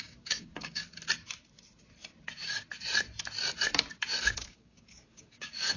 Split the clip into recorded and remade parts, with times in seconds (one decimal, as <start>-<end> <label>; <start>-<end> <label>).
0.0-0.8 remade; 0.8-4.3 recorded; 4.3-5.8 remade